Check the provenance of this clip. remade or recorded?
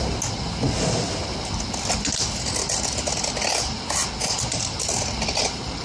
recorded